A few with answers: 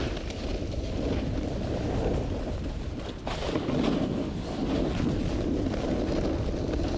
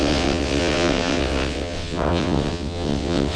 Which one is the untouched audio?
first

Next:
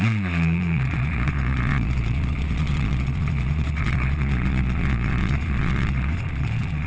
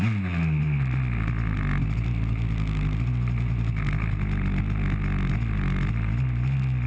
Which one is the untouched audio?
second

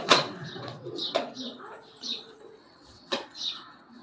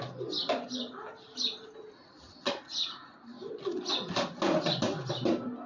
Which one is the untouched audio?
second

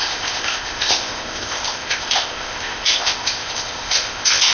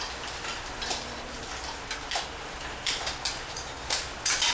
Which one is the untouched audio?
second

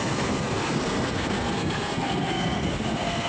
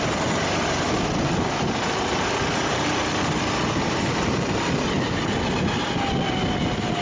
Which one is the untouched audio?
second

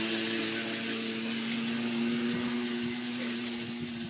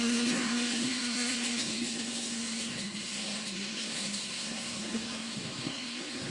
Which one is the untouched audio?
first